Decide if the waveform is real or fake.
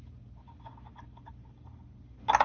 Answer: real